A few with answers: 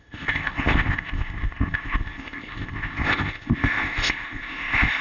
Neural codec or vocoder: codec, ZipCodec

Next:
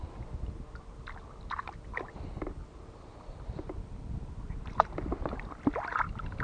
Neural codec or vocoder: none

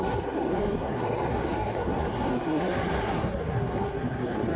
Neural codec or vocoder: codec, SNAC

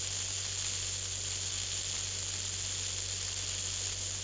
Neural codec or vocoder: none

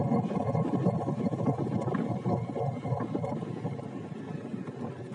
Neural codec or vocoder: none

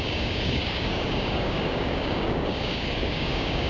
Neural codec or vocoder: codec, DAC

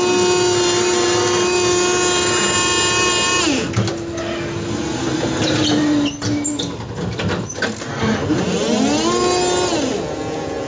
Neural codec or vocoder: none